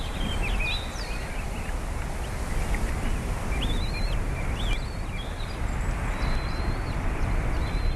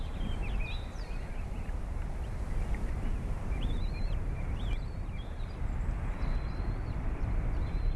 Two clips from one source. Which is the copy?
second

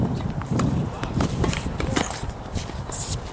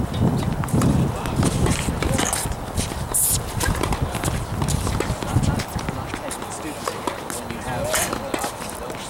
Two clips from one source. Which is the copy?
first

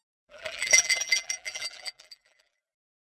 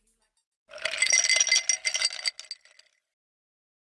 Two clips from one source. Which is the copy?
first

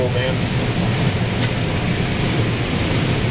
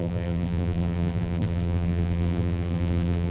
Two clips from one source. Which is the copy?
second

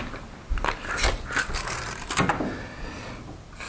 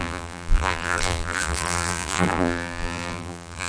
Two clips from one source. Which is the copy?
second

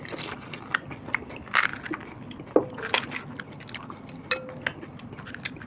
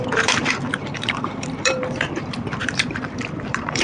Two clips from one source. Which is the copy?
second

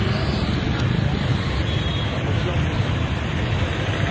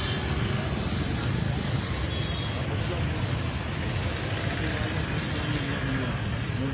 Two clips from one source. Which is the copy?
first